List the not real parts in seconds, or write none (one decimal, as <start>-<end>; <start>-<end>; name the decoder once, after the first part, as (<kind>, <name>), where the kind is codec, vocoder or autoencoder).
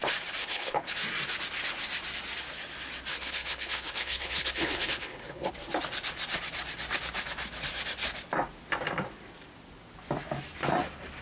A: 0.4-0.9 (codec, HILCodec); 3.1-5.5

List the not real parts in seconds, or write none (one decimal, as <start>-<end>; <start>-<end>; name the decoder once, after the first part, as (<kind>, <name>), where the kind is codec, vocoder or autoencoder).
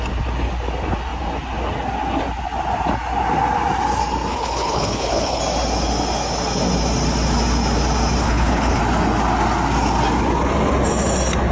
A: 4.3-5.4 (codec, HILCodec); 8.2-8.8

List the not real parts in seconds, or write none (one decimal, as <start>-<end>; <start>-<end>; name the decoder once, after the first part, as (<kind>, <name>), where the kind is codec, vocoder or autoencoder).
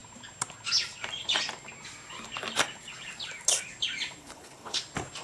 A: 4.2-4.8 (codec, HILCodec)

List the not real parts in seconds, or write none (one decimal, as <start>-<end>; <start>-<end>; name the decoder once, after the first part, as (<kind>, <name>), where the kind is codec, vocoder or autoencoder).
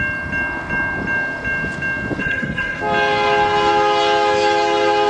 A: 2.2-2.8 (codec, HILCodec)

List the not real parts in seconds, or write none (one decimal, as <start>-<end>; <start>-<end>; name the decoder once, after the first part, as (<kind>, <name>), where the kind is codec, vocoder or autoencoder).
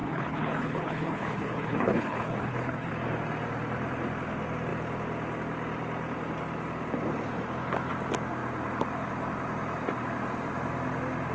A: 0.0-2.9 (codec, HILCodec)